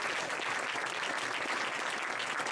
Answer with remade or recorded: recorded